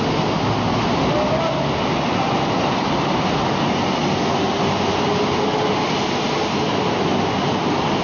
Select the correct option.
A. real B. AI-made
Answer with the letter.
A